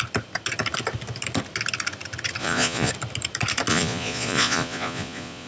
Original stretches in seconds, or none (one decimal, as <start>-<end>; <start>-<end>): 0.0-2.4; 2.9-3.7